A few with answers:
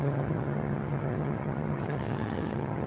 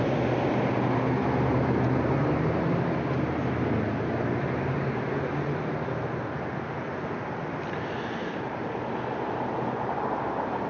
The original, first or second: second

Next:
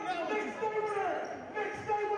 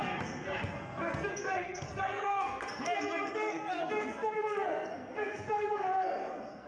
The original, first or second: first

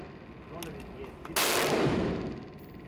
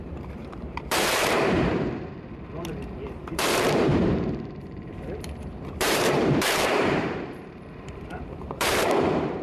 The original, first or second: first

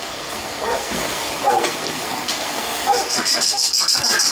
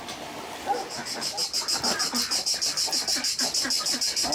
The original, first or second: second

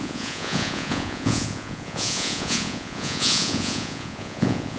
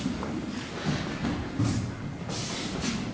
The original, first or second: second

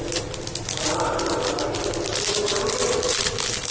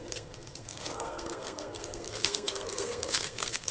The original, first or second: first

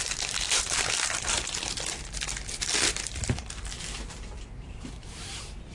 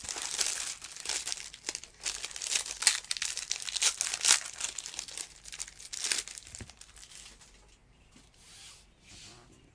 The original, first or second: second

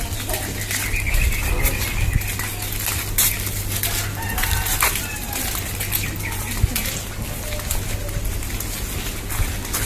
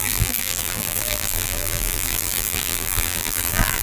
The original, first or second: first